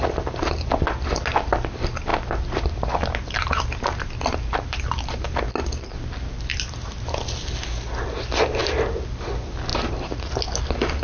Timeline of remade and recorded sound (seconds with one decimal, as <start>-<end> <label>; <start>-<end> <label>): 0.0-11.0 recorded